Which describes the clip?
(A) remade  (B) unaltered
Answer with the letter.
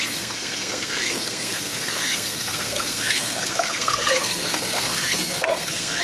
A